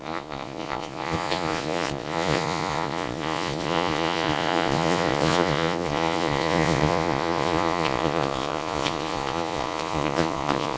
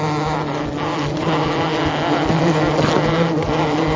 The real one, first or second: second